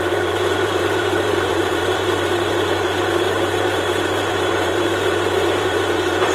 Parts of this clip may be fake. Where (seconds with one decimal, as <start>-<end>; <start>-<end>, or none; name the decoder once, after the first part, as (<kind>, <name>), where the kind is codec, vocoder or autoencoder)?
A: 0.0-6.3 (vocoder, BigVGAN v2)